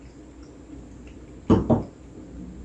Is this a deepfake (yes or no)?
no